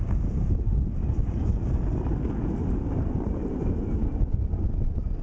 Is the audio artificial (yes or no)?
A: no